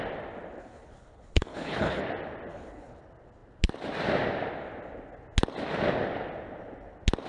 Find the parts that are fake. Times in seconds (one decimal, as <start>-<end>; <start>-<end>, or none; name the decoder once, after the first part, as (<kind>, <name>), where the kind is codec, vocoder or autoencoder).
0.6-2.0 (codec, HILCodec); 2.5-3.0